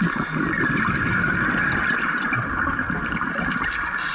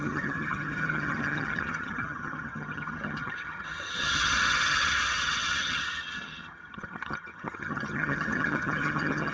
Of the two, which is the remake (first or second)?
second